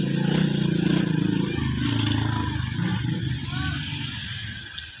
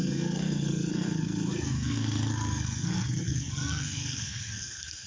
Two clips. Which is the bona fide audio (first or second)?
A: first